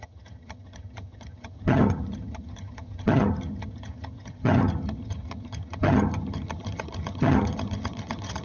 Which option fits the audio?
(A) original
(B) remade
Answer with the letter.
B